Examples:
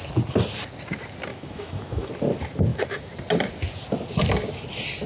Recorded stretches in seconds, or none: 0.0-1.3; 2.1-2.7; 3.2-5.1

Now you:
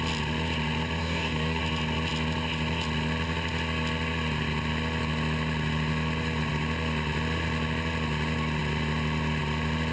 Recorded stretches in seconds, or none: 0.0-1.0; 1.6-9.9

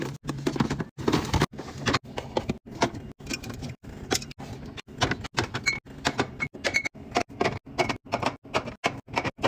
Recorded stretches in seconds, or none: 0.0-3.3; 4.1-9.5

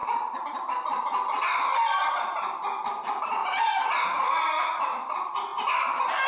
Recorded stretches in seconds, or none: 0.7-3.4; 3.9-6.3